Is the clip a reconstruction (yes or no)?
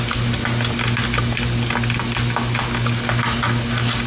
no